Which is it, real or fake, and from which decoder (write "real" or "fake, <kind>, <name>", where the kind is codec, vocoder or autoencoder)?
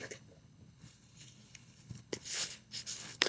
fake, codec, HILCodec